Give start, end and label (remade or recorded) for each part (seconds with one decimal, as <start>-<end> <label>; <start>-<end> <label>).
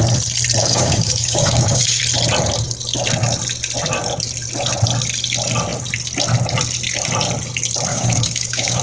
0.0-0.6 recorded; 0.6-2.0 remade; 2.0-7.9 recorded; 7.9-8.8 remade